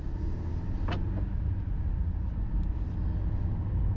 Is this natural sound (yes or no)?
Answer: yes